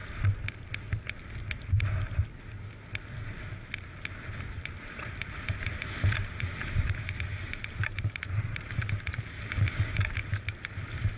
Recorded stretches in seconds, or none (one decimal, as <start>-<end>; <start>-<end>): 0.0-4.4